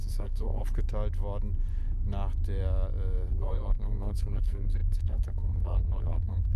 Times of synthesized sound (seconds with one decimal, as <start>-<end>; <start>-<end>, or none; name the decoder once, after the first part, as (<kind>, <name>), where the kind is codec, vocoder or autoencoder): 0.0-0.6 (codec, SNAC); 3.3-6.6